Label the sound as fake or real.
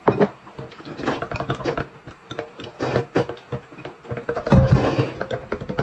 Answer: real